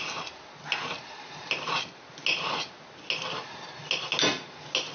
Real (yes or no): yes